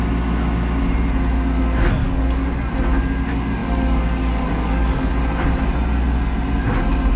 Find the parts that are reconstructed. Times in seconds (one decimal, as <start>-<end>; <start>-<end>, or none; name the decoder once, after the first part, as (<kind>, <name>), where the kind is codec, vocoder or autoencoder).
2.0-2.7 (codec, DAC); 3.6-5.1